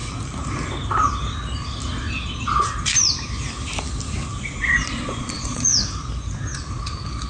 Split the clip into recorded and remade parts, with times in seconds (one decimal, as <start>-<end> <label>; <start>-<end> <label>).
0.0-4.4 recorded; 4.4-5.7 remade; 5.7-7.3 recorded

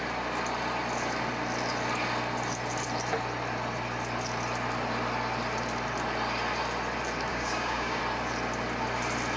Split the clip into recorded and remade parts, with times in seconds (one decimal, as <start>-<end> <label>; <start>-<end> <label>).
0.0-7.3 recorded; 7.3-8.0 remade; 8.0-9.4 recorded

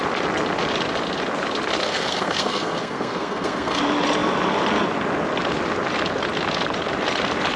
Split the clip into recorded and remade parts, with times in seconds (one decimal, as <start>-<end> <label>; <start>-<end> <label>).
0.0-1.8 recorded; 1.8-3.8 remade; 3.8-7.6 recorded

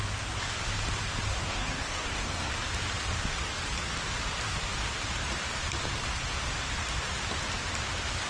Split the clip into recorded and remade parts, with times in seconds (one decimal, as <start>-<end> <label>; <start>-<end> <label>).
0.0-1.3 recorded; 1.3-2.5 remade; 2.5-8.3 recorded

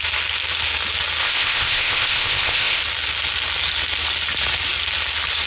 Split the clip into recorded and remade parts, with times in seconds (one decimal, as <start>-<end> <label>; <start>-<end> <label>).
0.0-1.2 recorded; 1.2-2.8 remade; 2.8-5.5 recorded

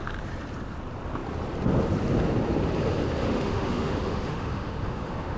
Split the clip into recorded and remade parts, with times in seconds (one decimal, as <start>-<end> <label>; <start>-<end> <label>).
0.0-3.2 recorded; 3.2-5.4 remade

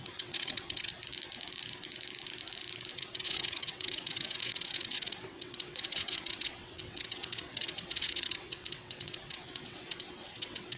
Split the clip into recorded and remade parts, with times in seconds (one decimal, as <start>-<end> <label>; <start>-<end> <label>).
0.0-0.9 remade; 0.9-2.9 recorded; 2.9-10.8 remade